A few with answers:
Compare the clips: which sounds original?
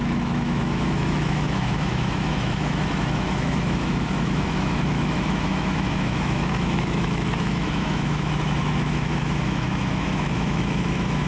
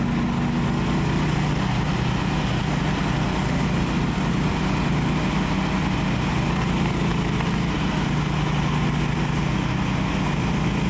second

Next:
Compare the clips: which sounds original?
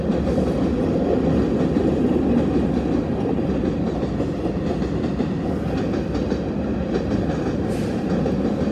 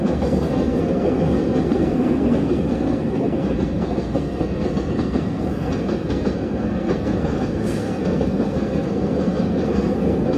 first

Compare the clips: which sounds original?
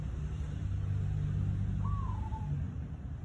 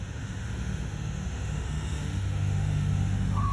first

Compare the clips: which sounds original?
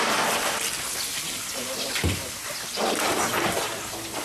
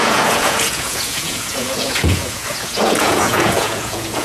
first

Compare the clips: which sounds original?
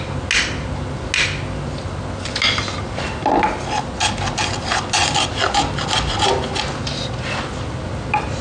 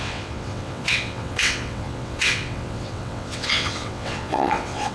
first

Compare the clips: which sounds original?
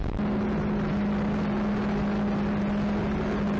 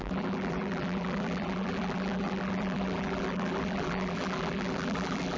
first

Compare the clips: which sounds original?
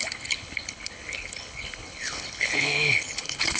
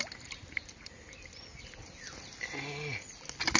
second